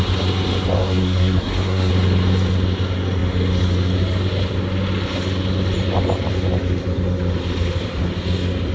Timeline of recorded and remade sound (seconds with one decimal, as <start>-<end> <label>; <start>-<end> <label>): 0.0-0.8 recorded; 0.8-1.9 remade; 1.9-8.7 recorded